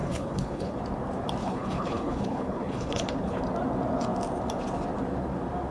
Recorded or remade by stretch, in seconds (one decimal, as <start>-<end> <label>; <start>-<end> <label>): 0.0-0.8 remade; 0.8-1.4 recorded; 1.4-3.4 remade; 3.4-5.7 recorded